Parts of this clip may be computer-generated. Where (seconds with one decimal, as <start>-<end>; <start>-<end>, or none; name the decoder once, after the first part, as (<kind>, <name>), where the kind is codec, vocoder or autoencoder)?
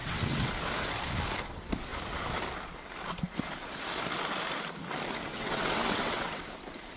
0.0-0.5 (vocoder, WaveNeXt); 5.3-6.4